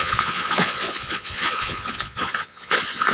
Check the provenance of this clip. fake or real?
fake